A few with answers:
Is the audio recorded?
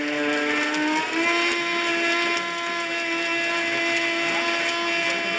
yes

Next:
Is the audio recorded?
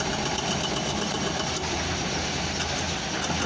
yes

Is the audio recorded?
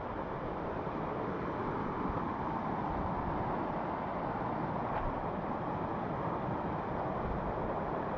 yes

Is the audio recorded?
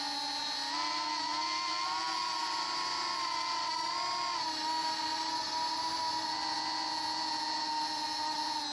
yes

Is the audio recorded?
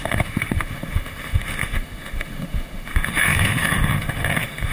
no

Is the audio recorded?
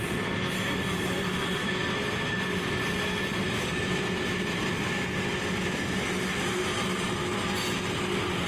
yes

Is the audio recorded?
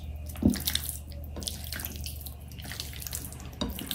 yes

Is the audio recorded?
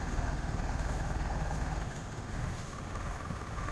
no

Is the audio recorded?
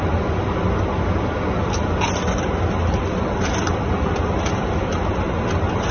yes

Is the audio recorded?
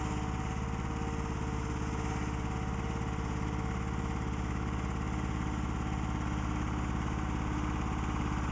yes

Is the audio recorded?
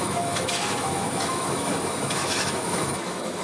no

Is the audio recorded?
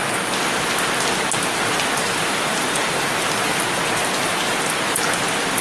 yes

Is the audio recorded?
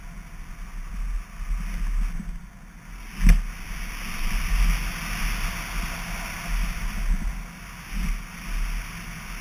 yes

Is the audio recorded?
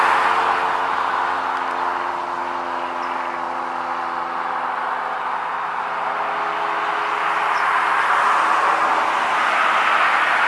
yes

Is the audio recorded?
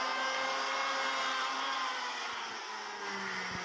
yes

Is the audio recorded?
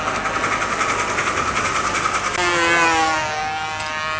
yes